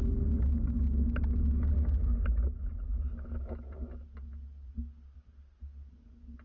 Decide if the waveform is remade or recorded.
recorded